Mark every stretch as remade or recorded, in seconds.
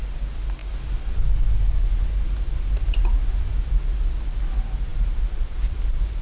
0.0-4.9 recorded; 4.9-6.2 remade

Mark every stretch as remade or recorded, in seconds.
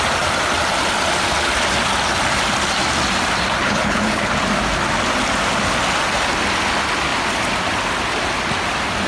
0.0-3.6 recorded; 3.6-4.3 remade; 4.3-9.1 recorded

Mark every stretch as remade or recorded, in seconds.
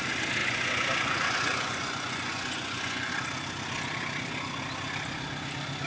0.0-0.4 recorded; 0.4-3.1 remade; 3.1-5.9 recorded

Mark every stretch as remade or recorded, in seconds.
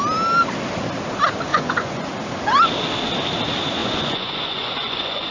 0.0-1.5 recorded; 1.5-2.1 remade; 2.1-3.8 recorded; 3.8-5.3 remade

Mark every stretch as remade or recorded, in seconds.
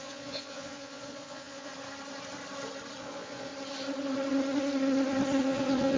0.0-1.7 remade; 1.7-3.0 recorded; 3.0-3.5 remade; 3.5-5.4 recorded; 5.4-6.0 remade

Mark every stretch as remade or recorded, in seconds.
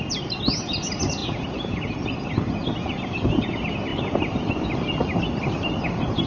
0.0-6.3 recorded